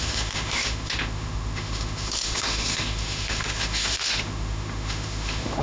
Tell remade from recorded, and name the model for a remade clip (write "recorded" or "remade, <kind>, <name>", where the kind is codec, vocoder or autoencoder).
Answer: remade, autoencoder, DAC-VAE